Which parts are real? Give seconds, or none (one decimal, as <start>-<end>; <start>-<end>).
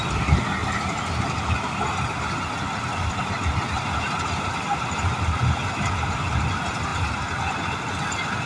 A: 0.0-8.5